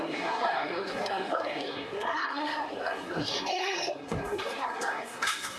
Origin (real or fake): fake